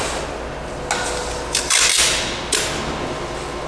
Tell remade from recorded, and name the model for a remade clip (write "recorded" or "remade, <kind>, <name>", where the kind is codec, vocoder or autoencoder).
recorded